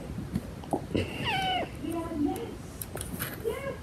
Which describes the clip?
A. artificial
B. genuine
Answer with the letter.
B